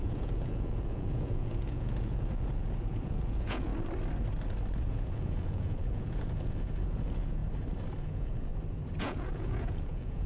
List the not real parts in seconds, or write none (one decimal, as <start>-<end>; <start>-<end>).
0.0-3.7; 4.8-7.4; 8.0-8.5; 9.0-10.3